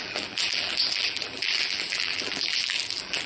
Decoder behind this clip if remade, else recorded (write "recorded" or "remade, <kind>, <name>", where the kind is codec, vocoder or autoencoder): remade, vocoder, BigVGAN v2